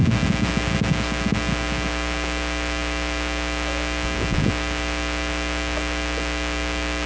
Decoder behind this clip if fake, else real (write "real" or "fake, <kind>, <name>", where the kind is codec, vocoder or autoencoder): real